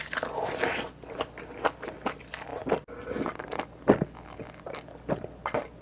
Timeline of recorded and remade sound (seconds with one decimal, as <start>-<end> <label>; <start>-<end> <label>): 0.0-5.8 recorded